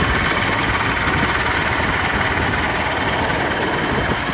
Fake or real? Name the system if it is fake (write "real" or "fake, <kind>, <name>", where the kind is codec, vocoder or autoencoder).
real